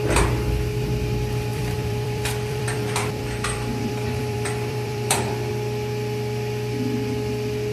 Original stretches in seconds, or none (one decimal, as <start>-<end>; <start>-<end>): 0.0-1.5; 5.5-7.7